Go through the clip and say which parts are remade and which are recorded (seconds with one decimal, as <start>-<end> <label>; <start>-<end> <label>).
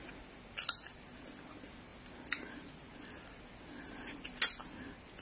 0.0-5.2 recorded